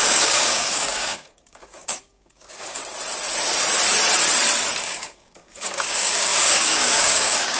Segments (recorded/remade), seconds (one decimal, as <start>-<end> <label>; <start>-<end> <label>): 0.0-2.8 remade; 2.8-4.8 recorded; 4.8-7.6 remade